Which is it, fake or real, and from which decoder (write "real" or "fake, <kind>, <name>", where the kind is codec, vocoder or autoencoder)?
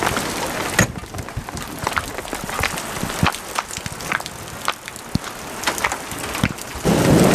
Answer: real